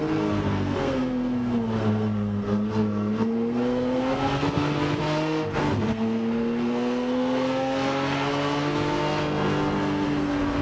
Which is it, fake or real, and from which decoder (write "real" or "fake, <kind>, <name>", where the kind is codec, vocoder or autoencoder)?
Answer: fake, codec, SNAC